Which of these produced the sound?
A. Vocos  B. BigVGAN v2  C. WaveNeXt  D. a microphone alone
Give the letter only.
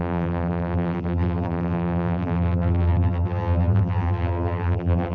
B